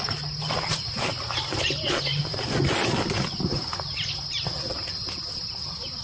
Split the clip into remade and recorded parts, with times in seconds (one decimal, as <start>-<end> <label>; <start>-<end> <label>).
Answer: 0.0-6.0 recorded